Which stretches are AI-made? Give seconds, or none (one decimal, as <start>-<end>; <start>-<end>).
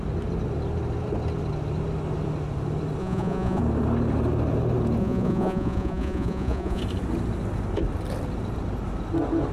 3.0-3.6; 5.0-6.8